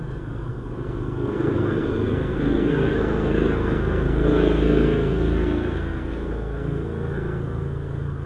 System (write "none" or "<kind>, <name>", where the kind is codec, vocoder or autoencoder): codec, SNAC